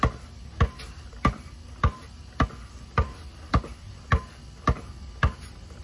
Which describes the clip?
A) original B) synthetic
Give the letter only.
A